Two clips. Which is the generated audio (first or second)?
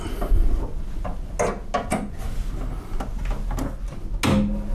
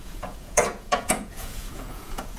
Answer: second